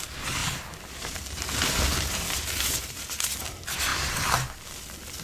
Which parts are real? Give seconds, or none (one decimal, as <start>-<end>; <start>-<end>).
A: 0.0-0.4; 3.0-5.2